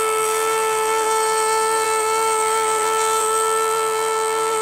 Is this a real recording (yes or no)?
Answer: no